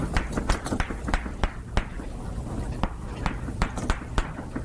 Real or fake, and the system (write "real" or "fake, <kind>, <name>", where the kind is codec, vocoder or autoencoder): real